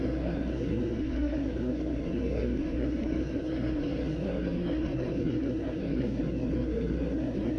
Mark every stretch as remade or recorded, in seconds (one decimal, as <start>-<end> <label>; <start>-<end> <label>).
0.0-7.6 remade